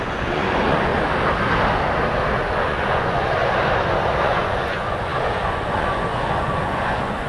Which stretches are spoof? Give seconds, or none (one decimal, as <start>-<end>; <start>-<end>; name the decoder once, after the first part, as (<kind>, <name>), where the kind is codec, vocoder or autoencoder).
0.0-0.9 (vocoder, Vocos); 2.5-3.4; 4.2-7.3